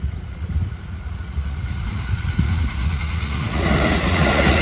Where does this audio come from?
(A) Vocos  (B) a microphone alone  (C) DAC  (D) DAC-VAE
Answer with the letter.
A